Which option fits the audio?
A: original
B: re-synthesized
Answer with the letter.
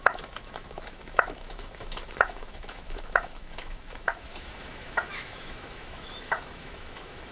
B